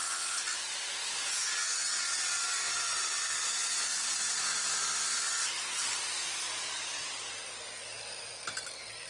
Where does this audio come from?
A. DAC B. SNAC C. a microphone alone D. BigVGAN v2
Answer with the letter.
C